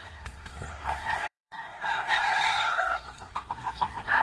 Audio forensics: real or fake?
fake